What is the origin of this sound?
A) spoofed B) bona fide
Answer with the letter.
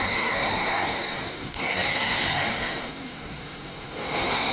A